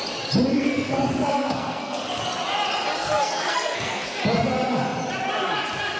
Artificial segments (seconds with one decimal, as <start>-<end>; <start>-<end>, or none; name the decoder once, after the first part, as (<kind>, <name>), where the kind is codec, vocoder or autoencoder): 0.5-2.2 (codec, SNAC); 3.0-4.2

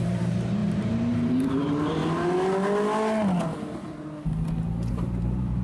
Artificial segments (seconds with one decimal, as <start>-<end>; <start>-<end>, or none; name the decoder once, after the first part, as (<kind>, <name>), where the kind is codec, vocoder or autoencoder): 0.0-2.0 (vocoder, BigVGAN v2); 4.9-5.6